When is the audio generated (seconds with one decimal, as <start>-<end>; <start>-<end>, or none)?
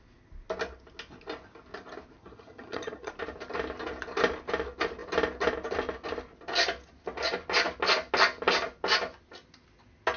2.2-3.1